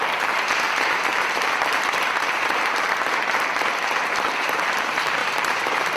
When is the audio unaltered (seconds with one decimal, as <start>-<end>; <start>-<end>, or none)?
0.0-1.1; 3.5-5.2